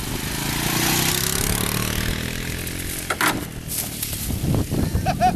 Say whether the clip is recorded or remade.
recorded